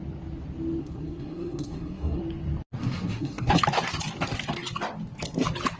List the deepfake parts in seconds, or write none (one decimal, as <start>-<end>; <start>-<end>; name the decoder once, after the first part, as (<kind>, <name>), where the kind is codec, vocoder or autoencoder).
0.8-2.2 (codec, SNAC); 2.8-3.5